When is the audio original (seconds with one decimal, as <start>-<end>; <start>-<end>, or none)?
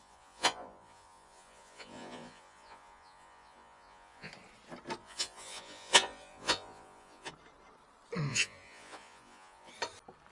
4.3-5.0; 7.3-8.3; 9.7-10.3